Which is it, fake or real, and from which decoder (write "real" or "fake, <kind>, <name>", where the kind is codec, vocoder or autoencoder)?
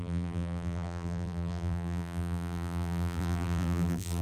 fake, vocoder, BigVGAN v2